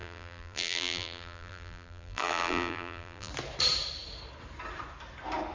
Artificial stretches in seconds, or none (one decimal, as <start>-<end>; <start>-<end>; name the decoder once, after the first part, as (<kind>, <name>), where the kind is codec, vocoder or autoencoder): 0.0-3.3 (vocoder, BigVGAN v2)